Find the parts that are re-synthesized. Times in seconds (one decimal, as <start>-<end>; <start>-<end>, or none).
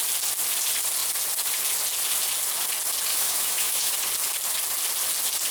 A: 3.1-3.9